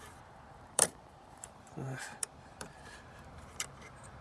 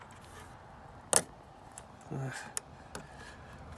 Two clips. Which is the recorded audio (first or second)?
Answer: second